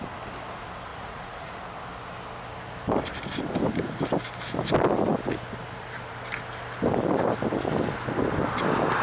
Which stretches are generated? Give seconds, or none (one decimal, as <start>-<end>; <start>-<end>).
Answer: 0.9-1.6